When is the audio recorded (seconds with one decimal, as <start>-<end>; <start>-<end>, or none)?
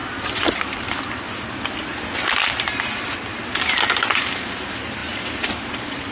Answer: 0.0-6.1